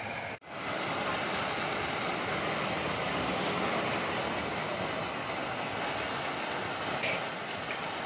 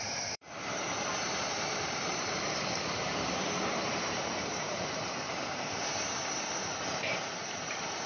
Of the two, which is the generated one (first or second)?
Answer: second